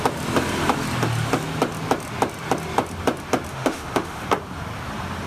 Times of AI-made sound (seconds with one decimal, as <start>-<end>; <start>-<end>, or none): 3.5-4.2